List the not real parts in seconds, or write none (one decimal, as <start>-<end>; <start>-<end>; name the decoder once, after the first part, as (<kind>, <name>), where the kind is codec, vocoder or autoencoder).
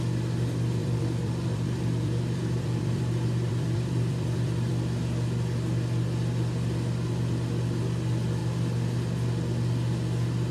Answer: 0.8-4.7 (vocoder, BigVGAN v2)